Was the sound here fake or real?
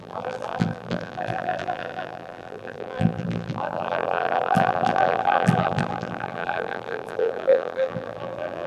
fake